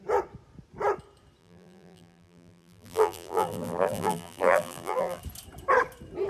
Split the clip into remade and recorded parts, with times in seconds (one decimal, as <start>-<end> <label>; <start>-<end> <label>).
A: 0.0-1.4 recorded; 1.4-5.2 remade; 5.2-6.3 recorded